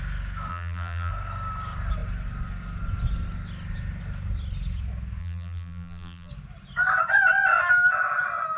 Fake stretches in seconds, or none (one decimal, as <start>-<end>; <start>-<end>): 0.5-1.1; 5.2-6.3